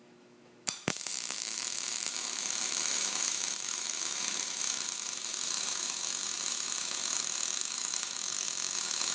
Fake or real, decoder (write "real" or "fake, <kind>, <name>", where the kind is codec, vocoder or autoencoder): fake, autoencoder, DAC-VAE